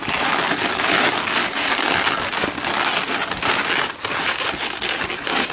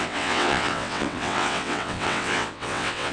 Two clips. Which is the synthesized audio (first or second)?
second